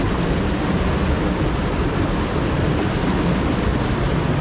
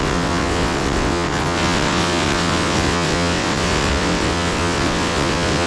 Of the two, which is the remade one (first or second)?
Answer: second